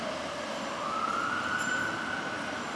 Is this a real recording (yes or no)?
yes